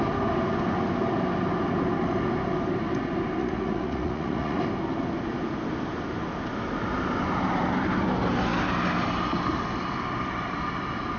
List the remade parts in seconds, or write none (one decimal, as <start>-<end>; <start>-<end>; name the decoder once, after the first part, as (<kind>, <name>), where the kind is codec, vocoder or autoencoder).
3.4-4.6 (vocoder, Vocos)